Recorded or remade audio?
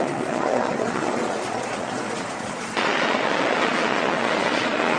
remade